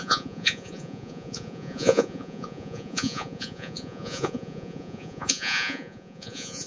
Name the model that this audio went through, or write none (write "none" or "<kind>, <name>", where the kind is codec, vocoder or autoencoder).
vocoder, Vocos